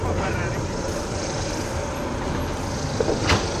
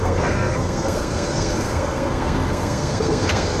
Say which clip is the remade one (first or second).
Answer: second